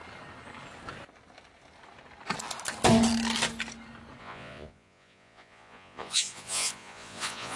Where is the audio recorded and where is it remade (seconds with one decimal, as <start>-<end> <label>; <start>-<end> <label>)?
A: 0.0-4.2 recorded; 4.2-7.6 remade